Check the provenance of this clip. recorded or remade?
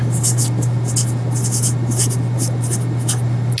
recorded